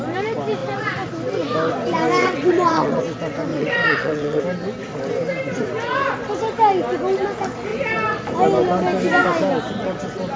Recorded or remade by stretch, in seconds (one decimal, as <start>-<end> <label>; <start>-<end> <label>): 0.0-2.2 recorded; 2.2-3.0 remade; 3.0-3.5 recorded; 3.5-4.4 remade; 4.4-10.4 recorded

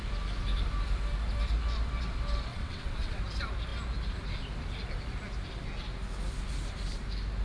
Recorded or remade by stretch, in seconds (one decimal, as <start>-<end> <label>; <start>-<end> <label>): 0.0-2.5 recorded; 2.5-3.2 remade; 3.2-7.4 recorded

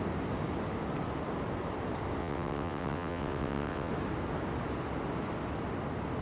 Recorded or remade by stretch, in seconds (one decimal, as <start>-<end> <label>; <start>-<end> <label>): 0.0-2.2 recorded; 2.2-3.9 remade; 3.9-6.2 recorded

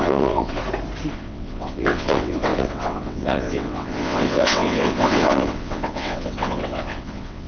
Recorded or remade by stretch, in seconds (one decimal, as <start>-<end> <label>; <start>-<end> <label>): 0.0-0.6 remade; 0.6-1.1 recorded; 1.1-7.5 remade

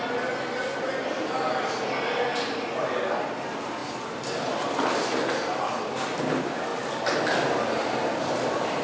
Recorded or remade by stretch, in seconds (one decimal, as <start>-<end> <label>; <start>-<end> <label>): 0.0-8.8 recorded